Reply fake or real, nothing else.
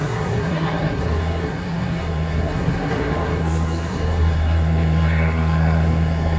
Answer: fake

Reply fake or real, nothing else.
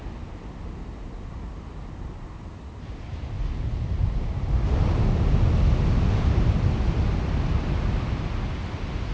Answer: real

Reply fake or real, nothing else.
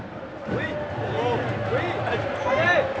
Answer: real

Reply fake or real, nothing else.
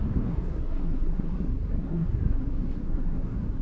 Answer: fake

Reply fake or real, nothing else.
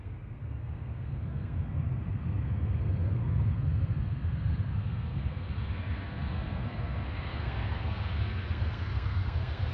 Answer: fake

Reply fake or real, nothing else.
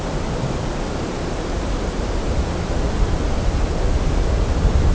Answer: real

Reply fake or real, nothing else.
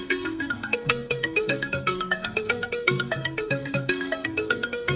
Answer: fake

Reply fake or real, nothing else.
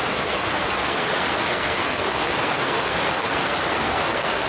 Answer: fake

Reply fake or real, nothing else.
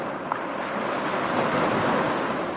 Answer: real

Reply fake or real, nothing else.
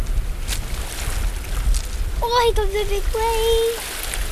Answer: real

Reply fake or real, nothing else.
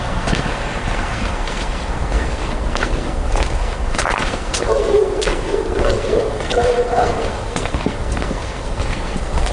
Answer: fake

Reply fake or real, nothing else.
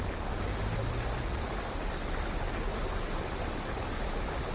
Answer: real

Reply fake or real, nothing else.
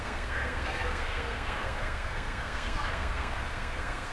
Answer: fake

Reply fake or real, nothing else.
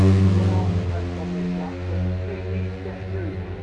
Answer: real